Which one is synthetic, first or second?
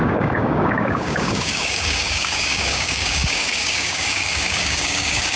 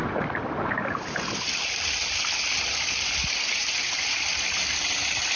first